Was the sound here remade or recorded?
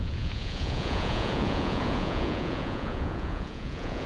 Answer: remade